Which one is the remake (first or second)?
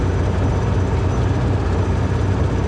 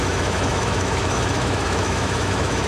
second